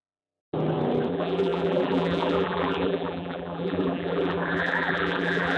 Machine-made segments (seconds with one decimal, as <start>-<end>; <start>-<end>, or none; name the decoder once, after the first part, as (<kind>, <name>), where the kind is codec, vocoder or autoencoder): 0.0-0.4 (vocoder, BigVGAN v2); 1.1-5.6